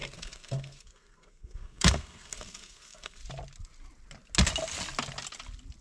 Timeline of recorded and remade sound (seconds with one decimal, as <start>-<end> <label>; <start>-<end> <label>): 0.0-3.2 remade; 3.2-5.8 recorded

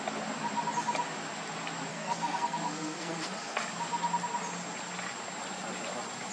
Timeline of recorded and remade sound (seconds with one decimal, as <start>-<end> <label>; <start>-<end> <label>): 0.0-1.9 recorded; 1.9-3.6 remade; 3.6-6.3 recorded

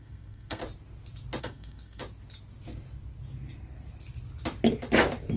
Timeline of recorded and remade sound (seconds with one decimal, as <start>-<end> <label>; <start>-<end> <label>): 0.0-0.6 remade; 0.6-1.4 recorded; 1.4-2.0 remade; 2.0-5.4 recorded

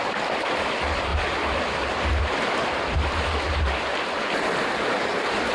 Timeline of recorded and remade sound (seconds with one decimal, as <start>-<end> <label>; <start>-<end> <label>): 0.0-5.5 recorded

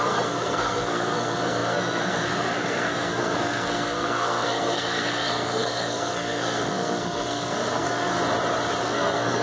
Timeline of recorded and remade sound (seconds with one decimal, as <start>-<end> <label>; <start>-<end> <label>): 0.0-8.2 remade; 8.2-8.8 recorded; 8.8-9.4 remade